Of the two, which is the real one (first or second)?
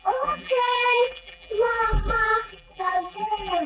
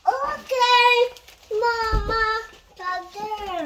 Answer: second